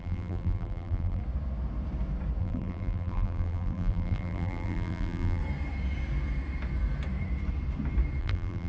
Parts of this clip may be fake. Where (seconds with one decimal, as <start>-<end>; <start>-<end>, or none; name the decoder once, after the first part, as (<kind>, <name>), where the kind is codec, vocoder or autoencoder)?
0.0-1.2 (vocoder, BigVGAN v2); 2.4-5.4; 8.2-8.7